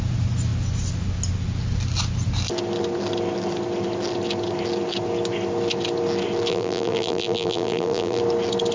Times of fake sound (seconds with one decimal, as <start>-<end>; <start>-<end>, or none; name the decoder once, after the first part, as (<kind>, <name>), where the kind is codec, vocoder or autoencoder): 6.5-8.2 (vocoder, BigVGAN v2)